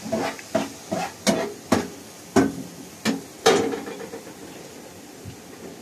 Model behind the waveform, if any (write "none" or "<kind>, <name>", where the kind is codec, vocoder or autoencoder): none